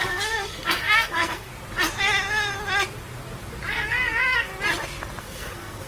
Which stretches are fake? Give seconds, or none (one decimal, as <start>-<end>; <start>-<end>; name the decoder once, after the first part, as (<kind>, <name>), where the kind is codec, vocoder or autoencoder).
0.0-1.5 (codec, SNAC); 3.7-4.5; 5.2-5.9